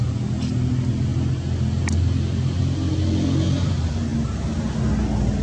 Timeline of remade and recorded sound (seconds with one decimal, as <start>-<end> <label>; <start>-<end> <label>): 0.0-5.4 recorded